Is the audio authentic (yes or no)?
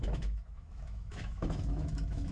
no